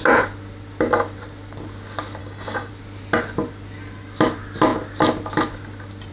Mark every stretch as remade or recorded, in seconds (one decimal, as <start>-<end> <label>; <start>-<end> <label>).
0.0-2.2 recorded; 2.2-2.7 remade; 2.7-6.1 recorded